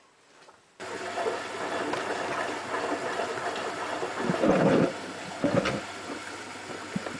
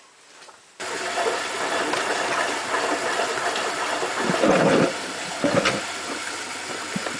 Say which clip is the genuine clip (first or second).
first